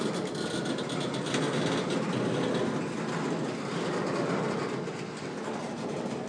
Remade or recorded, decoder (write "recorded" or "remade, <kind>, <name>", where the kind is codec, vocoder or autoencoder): recorded